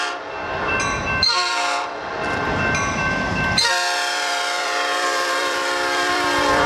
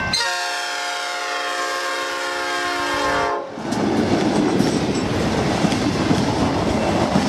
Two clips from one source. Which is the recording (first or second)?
second